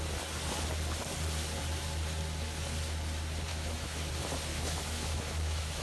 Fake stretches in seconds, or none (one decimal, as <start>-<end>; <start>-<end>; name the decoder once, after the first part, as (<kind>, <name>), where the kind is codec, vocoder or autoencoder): 3.5-4.1 (autoencoder, DAC-VAE); 4.5-5.8